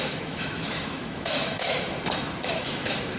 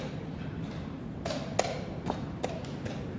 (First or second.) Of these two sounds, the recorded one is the second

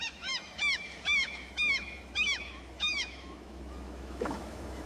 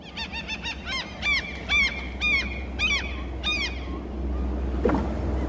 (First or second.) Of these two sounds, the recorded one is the second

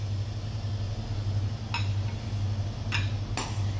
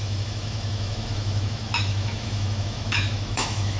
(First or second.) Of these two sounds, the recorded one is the first